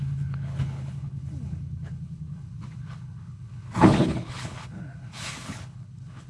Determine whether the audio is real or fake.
fake